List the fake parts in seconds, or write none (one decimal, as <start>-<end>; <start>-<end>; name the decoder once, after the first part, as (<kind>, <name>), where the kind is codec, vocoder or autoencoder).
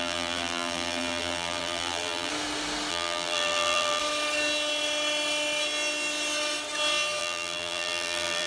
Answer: 0.0-2.3 (vocoder, BigVGAN v2); 2.9-4.0; 7.2-8.5